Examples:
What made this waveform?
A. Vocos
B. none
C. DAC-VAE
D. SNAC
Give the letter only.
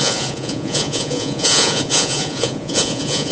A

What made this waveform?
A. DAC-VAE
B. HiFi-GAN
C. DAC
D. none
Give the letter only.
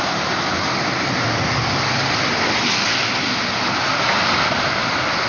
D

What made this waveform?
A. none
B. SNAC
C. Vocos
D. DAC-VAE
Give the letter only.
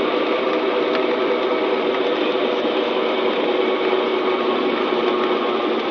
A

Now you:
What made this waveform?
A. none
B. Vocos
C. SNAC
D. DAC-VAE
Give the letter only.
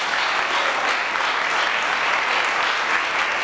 A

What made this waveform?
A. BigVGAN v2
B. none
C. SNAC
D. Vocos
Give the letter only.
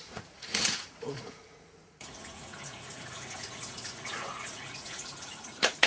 D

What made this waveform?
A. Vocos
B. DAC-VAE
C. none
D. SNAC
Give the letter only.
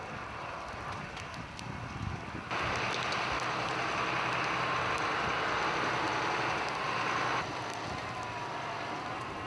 C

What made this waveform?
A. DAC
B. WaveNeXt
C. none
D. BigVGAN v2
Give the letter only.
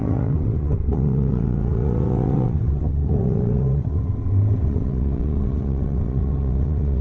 B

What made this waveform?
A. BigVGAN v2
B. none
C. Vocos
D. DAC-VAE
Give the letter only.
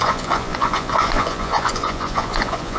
C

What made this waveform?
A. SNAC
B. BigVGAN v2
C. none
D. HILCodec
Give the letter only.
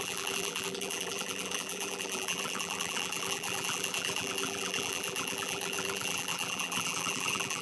B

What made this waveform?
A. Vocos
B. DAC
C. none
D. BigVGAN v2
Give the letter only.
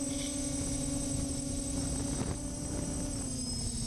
C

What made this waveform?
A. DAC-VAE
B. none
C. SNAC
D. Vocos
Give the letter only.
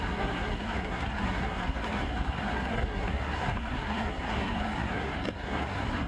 C